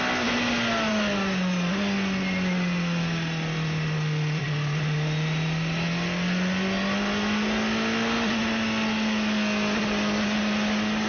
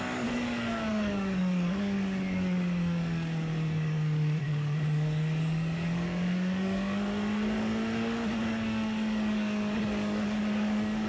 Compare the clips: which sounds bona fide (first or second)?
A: first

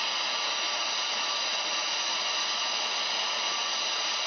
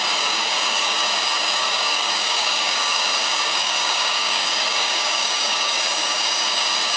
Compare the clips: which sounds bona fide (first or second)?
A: first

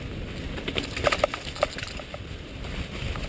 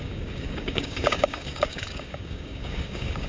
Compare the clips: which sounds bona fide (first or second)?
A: first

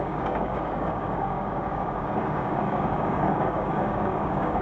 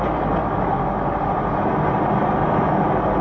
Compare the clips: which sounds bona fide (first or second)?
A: second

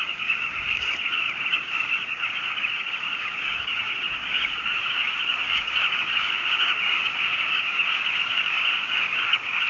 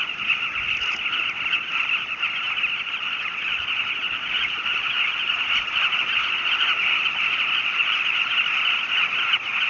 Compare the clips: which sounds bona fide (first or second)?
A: second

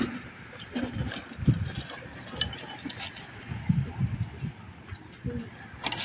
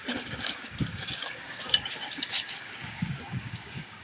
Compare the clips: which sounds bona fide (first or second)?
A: first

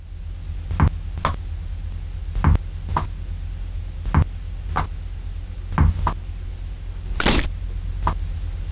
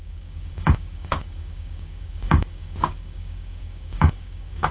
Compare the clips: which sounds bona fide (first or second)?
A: first